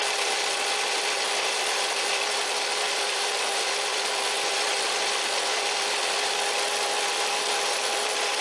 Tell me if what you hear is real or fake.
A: real